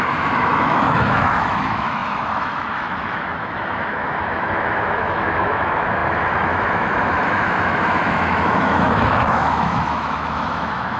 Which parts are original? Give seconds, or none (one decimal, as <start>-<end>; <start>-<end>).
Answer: none